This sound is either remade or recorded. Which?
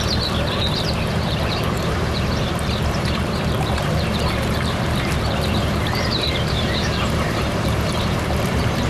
remade